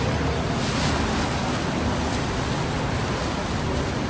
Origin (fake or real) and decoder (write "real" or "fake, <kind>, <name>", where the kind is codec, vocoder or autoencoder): real